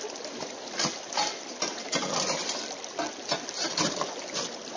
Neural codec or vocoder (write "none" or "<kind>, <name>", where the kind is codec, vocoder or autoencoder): none